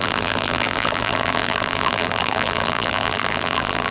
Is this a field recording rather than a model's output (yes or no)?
no